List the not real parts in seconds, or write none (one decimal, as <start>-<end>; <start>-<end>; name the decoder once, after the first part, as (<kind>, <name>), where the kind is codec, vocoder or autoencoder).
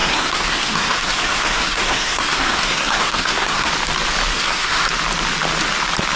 0.0-3.7 (codec, SNAC); 4.3-4.9